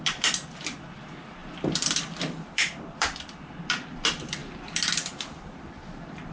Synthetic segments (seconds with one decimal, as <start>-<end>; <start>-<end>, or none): 0.0-6.3